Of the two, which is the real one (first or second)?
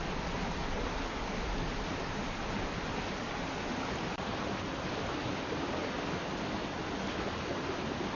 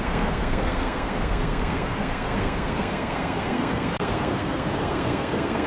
first